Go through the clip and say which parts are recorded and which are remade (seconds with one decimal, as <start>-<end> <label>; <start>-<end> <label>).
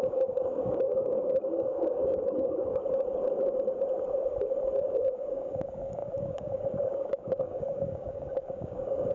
0.0-2.8 remade; 2.8-4.8 recorded; 4.8-9.1 remade